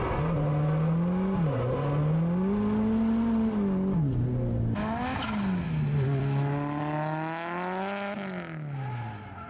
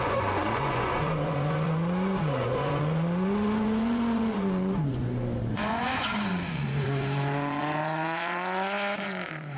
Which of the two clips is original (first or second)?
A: first